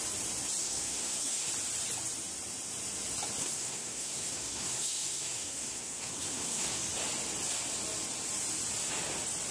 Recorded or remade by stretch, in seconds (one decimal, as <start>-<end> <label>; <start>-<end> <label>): 0.0-0.6 recorded; 0.6-1.5 remade; 1.5-3.4 recorded; 3.4-6.8 remade; 6.8-9.5 recorded